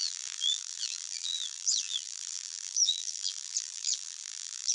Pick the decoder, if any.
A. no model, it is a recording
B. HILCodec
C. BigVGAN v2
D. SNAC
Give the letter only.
C